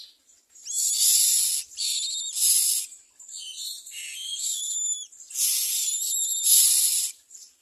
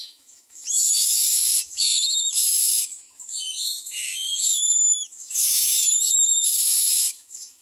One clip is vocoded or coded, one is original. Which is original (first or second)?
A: first